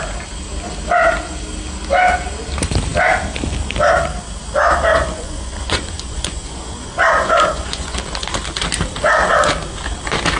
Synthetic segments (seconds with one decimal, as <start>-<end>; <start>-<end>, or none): 4.9-8.0